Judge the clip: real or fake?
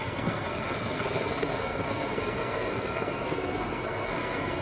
fake